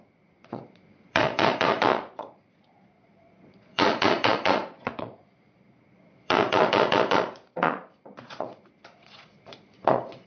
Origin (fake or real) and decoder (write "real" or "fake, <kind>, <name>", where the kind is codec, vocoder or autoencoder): fake, vocoder, Vocos